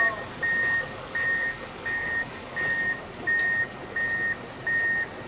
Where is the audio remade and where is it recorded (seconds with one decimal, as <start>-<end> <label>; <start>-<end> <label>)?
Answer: 0.0-0.6 recorded; 0.6-3.8 remade; 3.8-5.3 recorded